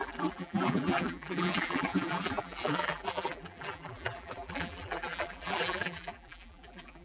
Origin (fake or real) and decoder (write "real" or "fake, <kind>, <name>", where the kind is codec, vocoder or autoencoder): fake, vocoder, BigVGAN v2